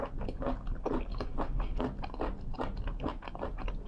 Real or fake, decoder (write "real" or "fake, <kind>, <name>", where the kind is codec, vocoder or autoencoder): real